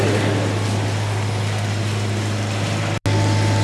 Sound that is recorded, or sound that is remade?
recorded